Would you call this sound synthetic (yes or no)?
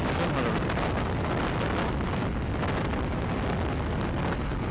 no